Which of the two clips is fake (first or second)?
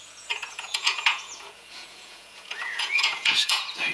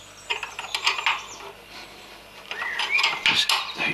first